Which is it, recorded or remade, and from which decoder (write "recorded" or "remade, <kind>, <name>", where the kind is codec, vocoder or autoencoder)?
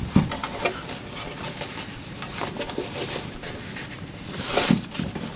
recorded